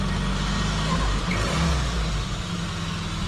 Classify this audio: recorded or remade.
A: recorded